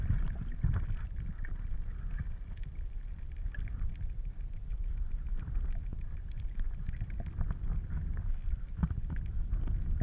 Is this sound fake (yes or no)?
yes